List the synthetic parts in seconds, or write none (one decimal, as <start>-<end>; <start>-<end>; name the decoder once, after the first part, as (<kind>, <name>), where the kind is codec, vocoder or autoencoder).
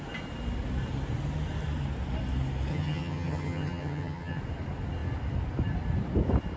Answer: 2.7-4.4 (vocoder, HiFi-GAN)